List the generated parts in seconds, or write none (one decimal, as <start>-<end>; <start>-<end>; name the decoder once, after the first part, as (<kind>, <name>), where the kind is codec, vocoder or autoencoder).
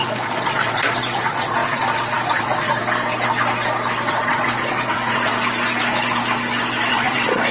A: 0.0-2.8 (vocoder, Vocos); 4.1-5.3; 6.9-7.5